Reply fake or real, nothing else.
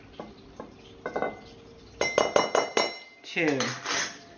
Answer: real